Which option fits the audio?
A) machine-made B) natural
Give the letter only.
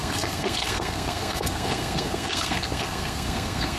A